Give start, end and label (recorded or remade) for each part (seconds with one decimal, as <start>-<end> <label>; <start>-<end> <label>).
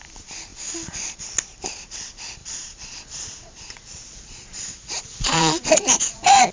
0.0-2.4 recorded; 2.4-6.5 remade